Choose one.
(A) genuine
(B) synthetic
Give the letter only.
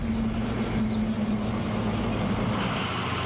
A